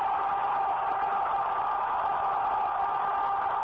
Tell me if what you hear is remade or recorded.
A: recorded